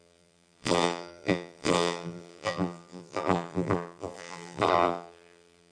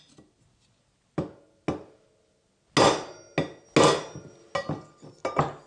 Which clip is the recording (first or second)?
second